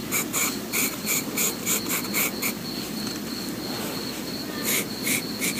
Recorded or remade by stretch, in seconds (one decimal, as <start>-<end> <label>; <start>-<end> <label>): 0.0-1.8 remade; 1.8-5.6 recorded